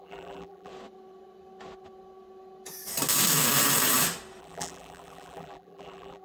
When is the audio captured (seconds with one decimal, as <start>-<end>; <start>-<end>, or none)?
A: 0.7-4.4